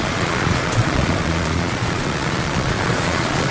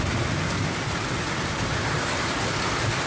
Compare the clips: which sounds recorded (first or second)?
second